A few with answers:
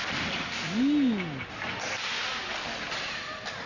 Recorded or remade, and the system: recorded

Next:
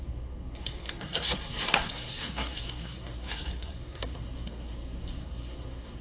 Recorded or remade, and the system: remade, codec, SNAC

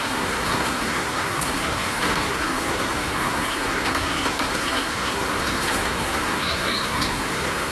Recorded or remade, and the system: remade, codec, SNAC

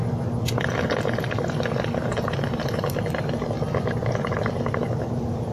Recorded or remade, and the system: recorded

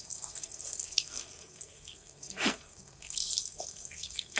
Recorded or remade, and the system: remade, codec, SNAC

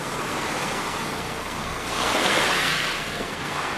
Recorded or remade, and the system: remade, codec, SNAC